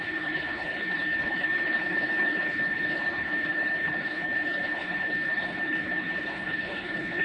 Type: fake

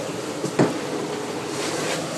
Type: real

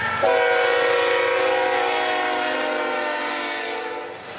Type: real